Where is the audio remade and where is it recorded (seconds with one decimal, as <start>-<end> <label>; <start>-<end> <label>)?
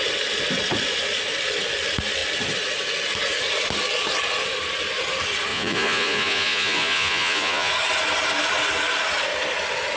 0.0-5.5 recorded; 5.5-7.7 remade; 7.7-10.0 recorded